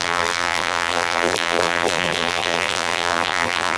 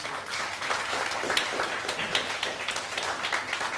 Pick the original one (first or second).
second